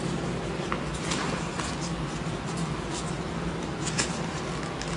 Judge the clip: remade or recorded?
recorded